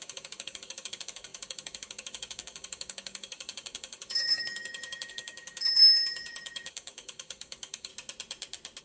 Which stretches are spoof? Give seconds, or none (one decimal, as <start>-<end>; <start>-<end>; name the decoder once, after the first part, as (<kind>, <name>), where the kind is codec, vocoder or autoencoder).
0.0-7.9 (codec, DAC)

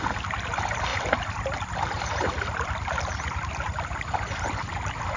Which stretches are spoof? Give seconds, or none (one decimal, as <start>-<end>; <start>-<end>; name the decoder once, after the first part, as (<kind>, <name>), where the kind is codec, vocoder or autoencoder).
none

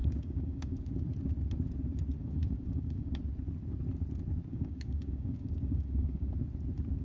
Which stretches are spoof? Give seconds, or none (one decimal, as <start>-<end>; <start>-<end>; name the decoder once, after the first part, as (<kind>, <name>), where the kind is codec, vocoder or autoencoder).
0.0-0.8 (codec, DAC); 2.2-3.2; 4.5-6.3

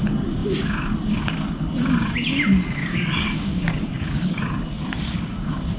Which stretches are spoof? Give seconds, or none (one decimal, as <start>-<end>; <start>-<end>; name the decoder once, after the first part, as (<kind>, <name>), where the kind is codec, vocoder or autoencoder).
2.8-4.4 (codec, DAC)

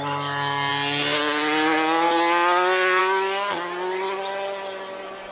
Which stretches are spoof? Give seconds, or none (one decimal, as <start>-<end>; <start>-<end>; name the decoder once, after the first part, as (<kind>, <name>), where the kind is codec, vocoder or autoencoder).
none

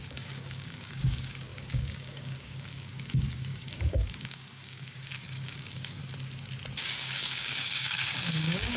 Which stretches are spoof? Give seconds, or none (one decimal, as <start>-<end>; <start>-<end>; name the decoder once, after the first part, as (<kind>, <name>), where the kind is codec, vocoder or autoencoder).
0.0-6.0 (codec, DAC); 6.8-8.8

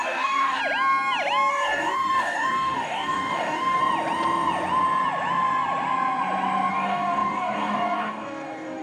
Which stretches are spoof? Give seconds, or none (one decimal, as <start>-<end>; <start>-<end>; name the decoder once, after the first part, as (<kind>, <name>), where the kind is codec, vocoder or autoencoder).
0.0-0.6 (codec, DAC); 1.5-3.8; 6.7-8.8

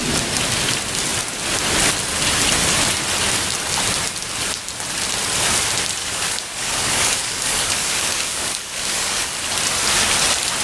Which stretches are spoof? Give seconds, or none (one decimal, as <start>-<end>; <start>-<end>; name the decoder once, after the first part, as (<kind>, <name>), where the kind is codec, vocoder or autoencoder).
6.0-9.3 (codec, DAC)